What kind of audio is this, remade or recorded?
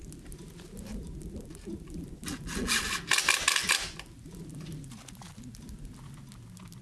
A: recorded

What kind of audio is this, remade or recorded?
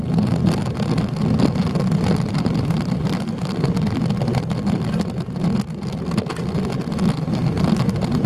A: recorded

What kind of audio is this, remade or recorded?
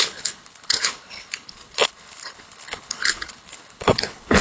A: remade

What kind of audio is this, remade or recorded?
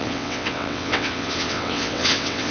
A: remade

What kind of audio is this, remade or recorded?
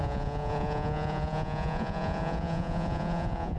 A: remade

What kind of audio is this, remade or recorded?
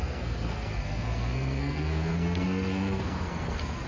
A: remade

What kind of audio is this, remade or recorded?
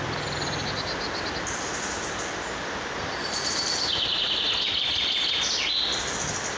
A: remade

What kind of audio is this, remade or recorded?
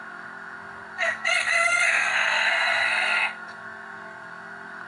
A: remade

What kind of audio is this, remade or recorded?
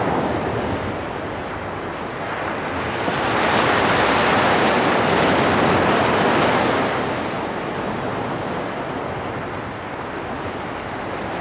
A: recorded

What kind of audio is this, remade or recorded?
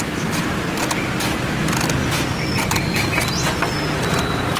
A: recorded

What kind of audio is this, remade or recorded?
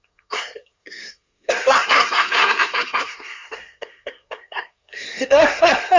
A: remade